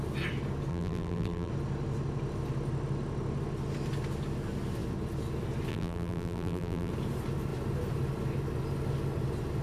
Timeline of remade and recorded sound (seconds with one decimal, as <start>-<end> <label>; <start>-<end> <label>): 0.0-0.7 recorded; 0.7-1.5 remade; 1.5-5.7 recorded; 5.7-6.9 remade; 6.9-9.6 recorded